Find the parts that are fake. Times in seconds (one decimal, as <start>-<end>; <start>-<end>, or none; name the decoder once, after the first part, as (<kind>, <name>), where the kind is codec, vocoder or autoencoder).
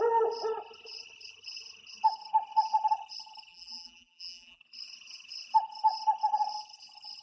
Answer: 3.5-4.6 (vocoder, BigVGAN v2)